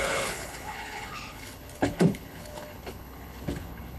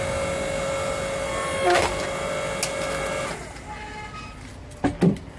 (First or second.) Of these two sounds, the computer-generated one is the first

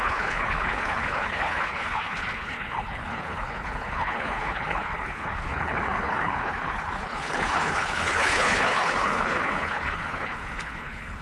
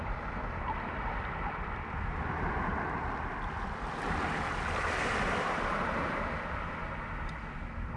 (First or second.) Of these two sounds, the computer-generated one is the first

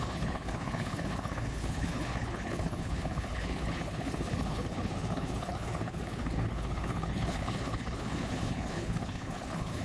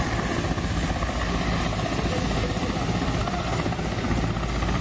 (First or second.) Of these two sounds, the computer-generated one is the first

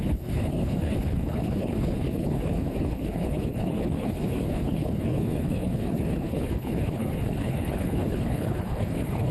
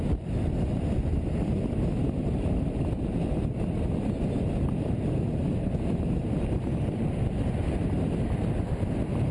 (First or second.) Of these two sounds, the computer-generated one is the first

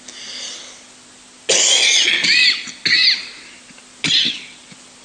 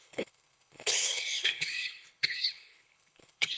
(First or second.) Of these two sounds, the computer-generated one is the second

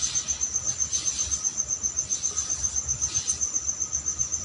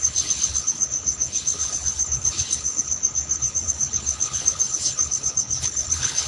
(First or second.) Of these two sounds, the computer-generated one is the second